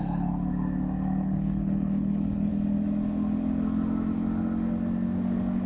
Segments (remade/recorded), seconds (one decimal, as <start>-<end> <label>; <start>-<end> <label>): 0.0-1.2 recorded; 1.2-2.5 remade; 2.5-5.7 recorded